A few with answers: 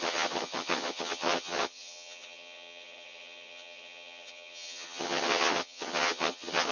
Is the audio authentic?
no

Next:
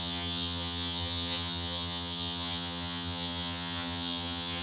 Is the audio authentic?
no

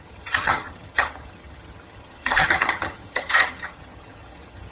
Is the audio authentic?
no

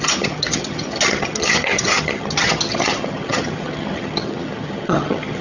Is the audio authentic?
no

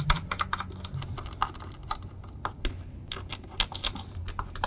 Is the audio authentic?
yes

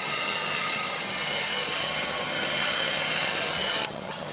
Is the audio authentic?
no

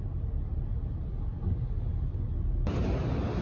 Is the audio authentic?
yes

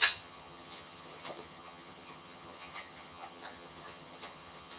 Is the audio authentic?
no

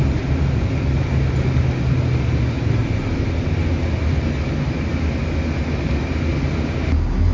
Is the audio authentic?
yes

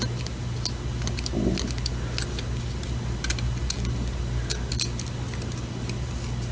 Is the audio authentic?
yes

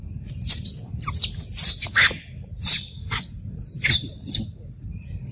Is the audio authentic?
yes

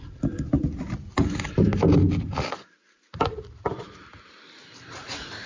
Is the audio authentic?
yes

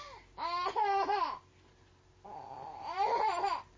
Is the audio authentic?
yes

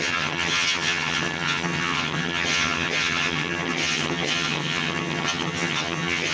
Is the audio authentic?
no